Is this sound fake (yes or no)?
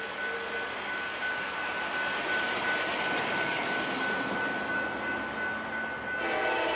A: no